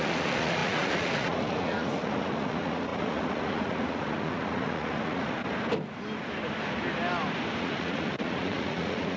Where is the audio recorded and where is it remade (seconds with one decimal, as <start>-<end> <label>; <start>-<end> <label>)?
0.0-5.4 remade; 5.4-7.6 recorded; 7.6-9.2 remade

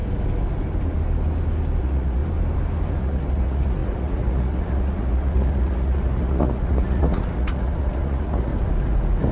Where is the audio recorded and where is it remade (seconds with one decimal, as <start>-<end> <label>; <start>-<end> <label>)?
0.0-1.8 recorded; 1.8-2.2 remade; 2.2-3.0 recorded; 3.0-8.5 remade; 8.5-9.3 recorded

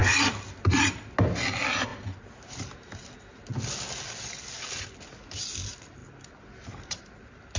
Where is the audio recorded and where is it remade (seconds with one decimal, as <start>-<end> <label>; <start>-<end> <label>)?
0.0-7.6 recorded

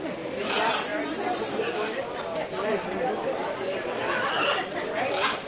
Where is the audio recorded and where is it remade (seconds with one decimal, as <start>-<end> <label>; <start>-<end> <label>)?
0.0-5.5 recorded

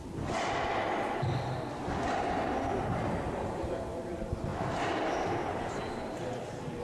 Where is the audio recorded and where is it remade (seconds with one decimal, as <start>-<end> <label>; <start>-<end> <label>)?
0.0-6.8 recorded

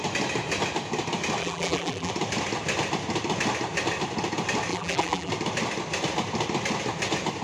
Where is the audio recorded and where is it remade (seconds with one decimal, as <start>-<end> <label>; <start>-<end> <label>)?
0.0-1.4 recorded; 1.4-2.1 remade; 2.1-4.7 recorded; 4.7-5.3 remade; 5.3-7.4 recorded

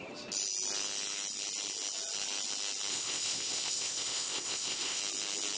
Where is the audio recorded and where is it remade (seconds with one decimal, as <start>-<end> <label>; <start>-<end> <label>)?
0.0-2.9 recorded; 2.9-5.0 remade; 5.0-5.6 recorded

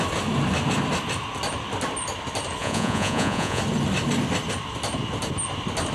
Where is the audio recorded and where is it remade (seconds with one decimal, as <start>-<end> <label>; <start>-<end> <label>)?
0.0-2.6 recorded; 2.6-3.6 remade; 3.6-5.9 recorded